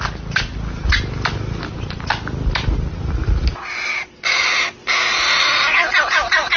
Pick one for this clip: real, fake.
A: real